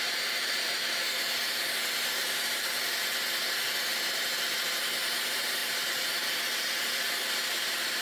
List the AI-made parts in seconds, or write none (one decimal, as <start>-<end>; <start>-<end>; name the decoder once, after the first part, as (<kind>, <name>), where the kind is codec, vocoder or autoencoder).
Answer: 5.6-6.3 (vocoder, BigVGAN v2)